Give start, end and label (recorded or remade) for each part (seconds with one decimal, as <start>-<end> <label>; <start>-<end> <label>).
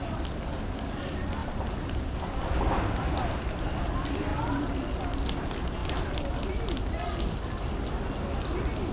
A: 0.0-1.4 recorded; 1.4-2.1 remade; 2.1-4.3 recorded; 4.3-4.9 remade; 4.9-5.8 recorded; 5.8-6.3 remade; 6.3-8.9 recorded